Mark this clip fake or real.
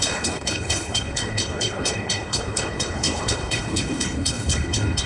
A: fake